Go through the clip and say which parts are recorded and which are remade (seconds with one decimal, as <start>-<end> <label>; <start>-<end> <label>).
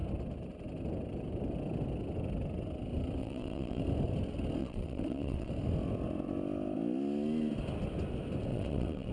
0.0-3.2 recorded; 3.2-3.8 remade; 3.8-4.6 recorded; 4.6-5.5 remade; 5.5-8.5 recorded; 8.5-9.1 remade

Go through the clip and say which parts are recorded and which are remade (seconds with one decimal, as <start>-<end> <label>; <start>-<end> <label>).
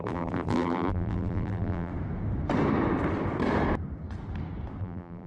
0.0-1.9 remade; 1.9-4.8 recorded; 4.8-5.3 remade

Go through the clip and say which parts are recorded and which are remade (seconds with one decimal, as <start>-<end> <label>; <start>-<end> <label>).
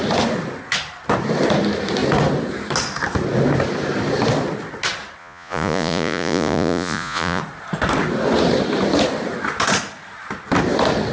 0.0-5.2 recorded; 5.2-7.4 remade; 7.4-11.1 recorded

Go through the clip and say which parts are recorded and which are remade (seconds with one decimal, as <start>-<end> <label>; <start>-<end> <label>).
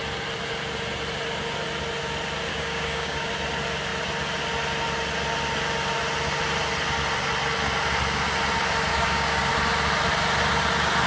0.0-2.5 recorded; 2.5-3.3 remade; 3.3-8.9 recorded; 8.9-9.5 remade; 9.5-11.1 recorded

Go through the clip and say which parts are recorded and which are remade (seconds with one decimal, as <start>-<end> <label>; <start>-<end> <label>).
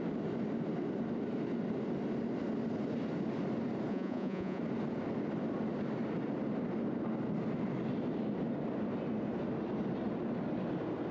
0.0-3.9 recorded; 3.9-4.6 remade; 4.6-11.1 recorded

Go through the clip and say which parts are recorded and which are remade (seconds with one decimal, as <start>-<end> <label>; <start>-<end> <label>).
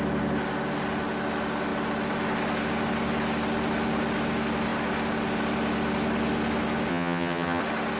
0.0-6.9 recorded; 6.9-7.6 remade; 7.6-8.0 recorded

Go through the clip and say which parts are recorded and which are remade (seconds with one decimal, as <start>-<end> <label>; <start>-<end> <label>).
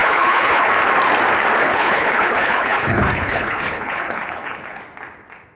0.0-0.7 remade; 0.7-1.6 recorded; 1.6-4.8 remade; 4.8-5.6 recorded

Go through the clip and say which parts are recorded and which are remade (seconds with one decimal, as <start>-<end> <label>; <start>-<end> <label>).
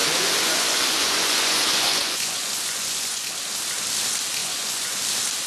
0.0-3.3 remade; 3.3-4.4 recorded; 4.4-5.0 remade; 5.0-5.5 recorded